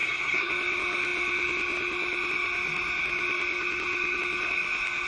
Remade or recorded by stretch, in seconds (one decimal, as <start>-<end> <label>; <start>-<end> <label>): 0.0-0.5 remade; 0.5-5.1 recorded